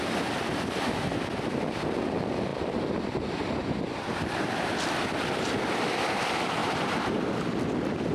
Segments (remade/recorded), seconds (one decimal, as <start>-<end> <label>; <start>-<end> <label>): 0.0-6.6 recorded; 6.6-7.2 remade; 7.2-8.1 recorded